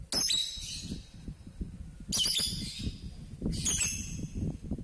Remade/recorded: recorded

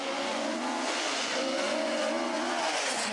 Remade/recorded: remade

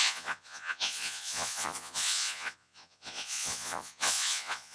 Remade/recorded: remade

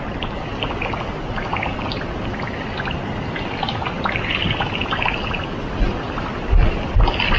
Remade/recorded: recorded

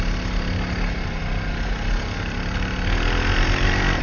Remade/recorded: recorded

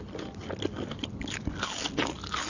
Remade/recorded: recorded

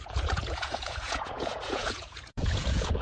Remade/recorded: remade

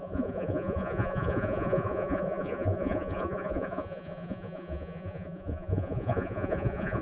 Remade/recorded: remade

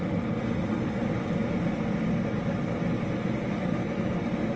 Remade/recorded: recorded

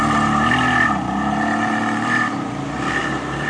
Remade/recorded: recorded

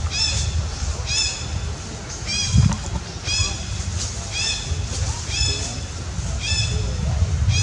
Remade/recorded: recorded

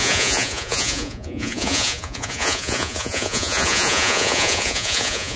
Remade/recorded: remade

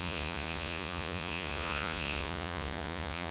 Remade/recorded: remade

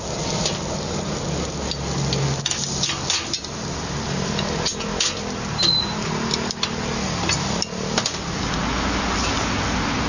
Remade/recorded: recorded